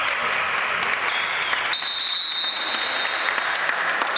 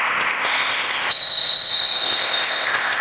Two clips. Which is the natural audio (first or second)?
first